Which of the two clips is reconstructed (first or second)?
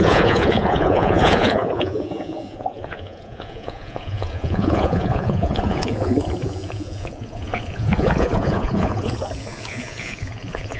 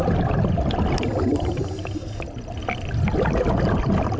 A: first